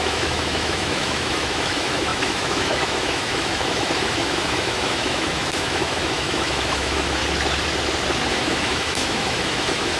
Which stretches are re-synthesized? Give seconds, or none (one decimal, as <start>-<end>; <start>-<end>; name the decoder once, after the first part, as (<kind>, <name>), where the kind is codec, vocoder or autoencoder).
0.0-7.2 (autoencoder, DAC-VAE); 8.3-10.0